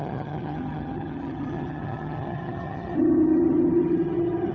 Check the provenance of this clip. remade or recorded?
remade